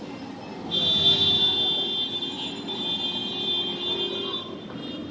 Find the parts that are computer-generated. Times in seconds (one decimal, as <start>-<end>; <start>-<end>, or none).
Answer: none